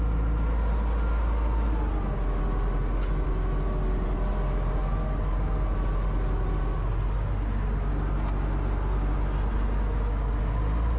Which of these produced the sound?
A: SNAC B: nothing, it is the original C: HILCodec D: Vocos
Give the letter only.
B